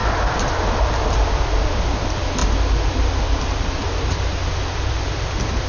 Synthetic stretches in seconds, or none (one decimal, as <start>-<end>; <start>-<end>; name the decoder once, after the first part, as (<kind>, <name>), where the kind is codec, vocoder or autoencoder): none